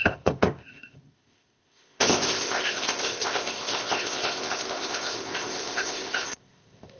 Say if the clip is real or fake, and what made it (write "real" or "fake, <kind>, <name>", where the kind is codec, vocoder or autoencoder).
fake, codec, ZipCodec